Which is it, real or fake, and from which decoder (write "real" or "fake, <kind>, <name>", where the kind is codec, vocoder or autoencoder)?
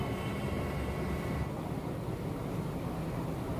real